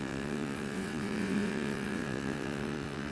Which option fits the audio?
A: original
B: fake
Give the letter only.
B